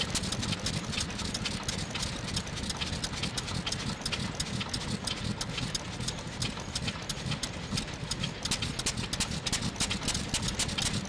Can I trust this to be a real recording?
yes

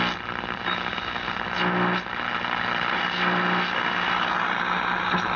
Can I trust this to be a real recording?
yes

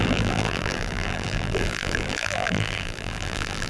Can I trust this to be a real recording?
no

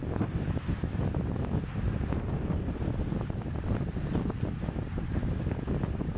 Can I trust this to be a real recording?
no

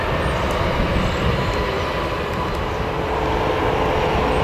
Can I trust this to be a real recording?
yes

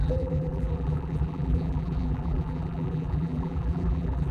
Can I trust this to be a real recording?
no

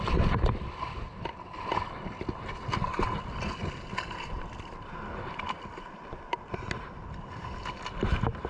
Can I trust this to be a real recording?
yes